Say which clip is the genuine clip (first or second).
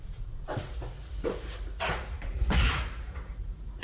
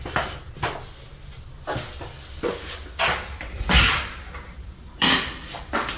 second